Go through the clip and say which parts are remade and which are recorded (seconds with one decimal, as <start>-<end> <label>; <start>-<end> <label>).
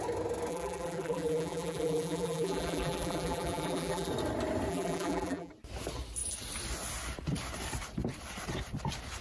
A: 0.0-0.5 recorded; 0.5-4.1 remade; 4.1-4.7 recorded; 4.7-5.5 remade; 5.5-9.2 recorded